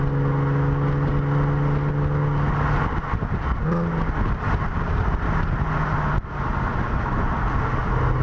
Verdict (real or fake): real